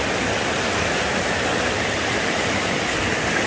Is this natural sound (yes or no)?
yes